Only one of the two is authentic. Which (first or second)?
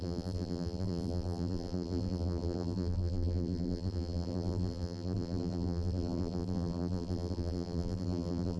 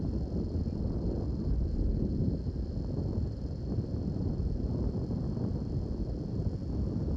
second